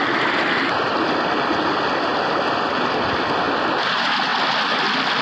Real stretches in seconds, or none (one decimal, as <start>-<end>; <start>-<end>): 0.0-5.2